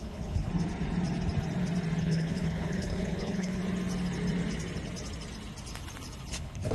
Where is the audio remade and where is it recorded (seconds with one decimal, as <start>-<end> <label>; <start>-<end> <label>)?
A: 0.0-0.5 remade; 0.5-2.0 recorded; 2.0-3.6 remade; 3.6-6.3 recorded; 6.3-6.7 remade